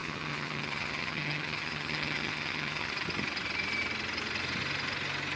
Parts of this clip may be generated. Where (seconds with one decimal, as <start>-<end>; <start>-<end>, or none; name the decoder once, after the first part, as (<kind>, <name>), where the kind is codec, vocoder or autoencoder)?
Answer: 0.0-2.9 (vocoder, HiFi-GAN)